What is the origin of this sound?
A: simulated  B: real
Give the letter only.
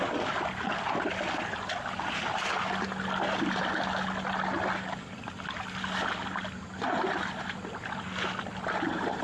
B